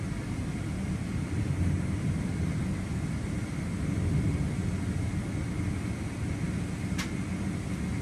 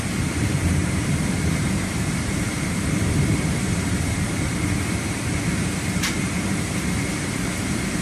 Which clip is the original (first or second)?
first